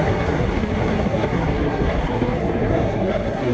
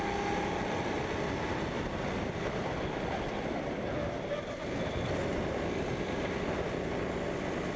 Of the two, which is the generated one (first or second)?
first